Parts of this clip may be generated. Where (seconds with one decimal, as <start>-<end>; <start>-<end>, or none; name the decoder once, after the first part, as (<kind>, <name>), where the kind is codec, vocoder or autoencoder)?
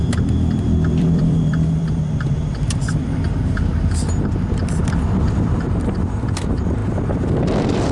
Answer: 0.0-3.0 (vocoder, BigVGAN v2); 4.8-6.8; 7.4-7.9